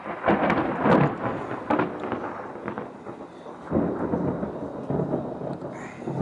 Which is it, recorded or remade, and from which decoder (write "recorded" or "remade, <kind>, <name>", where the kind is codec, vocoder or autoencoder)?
recorded